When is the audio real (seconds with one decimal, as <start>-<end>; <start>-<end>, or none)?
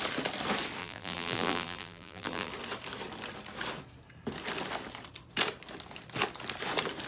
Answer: 0.0-0.8; 2.5-7.1